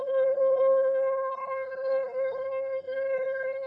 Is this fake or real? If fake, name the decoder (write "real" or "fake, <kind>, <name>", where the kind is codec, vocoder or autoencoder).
fake, codec, SNAC